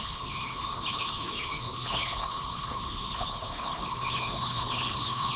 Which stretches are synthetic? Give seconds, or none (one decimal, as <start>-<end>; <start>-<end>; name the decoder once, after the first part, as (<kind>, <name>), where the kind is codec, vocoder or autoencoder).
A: 0.0-5.4 (codec, HILCodec)